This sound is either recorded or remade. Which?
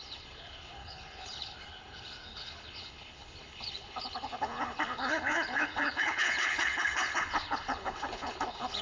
remade